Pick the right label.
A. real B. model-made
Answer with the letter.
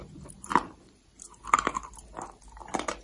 B